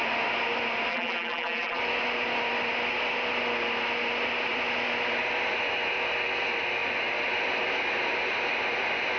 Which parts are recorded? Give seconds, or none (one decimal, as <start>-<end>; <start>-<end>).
0.0-0.9; 1.8-9.2